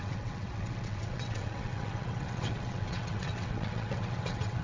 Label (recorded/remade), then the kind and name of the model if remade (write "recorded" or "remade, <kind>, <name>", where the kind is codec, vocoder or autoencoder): remade, vocoder, WaveNeXt